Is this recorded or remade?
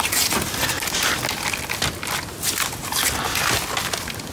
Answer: recorded